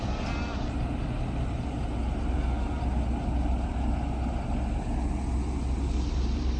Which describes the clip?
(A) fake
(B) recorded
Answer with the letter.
B